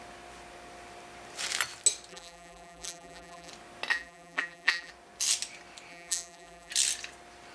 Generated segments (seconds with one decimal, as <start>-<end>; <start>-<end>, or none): 2.1-3.5; 3.9-4.9; 5.9-6.7